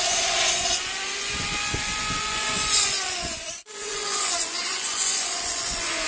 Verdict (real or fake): fake